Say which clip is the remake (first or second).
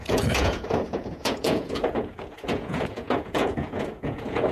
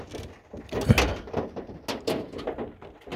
first